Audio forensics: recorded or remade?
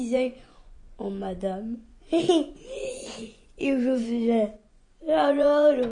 remade